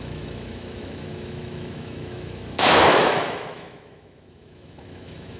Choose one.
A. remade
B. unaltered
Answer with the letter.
A